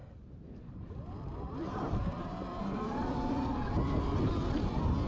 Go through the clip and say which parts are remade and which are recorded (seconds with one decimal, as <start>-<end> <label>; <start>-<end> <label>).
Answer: 0.0-3.1 remade; 3.1-5.1 recorded